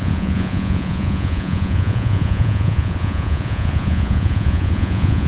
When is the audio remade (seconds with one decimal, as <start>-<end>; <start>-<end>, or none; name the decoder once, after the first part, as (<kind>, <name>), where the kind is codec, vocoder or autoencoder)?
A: 0.0-5.3 (vocoder, Vocos)